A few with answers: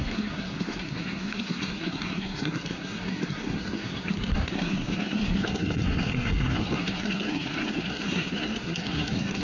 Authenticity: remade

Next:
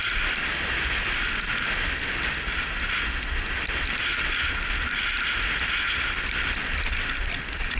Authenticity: recorded